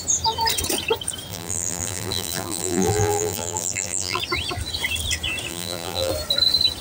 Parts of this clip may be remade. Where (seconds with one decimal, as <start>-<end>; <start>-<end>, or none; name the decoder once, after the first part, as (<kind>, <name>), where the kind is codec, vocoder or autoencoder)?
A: 1.3-4.2 (vocoder, BigVGAN v2); 5.5-6.1